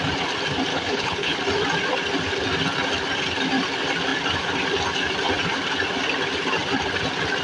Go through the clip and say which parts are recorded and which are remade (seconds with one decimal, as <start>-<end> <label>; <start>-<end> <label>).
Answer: 0.0-0.7 recorded; 0.7-1.4 remade; 1.4-7.4 recorded